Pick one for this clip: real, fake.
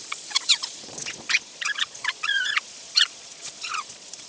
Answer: fake